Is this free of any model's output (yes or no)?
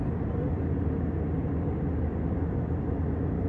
yes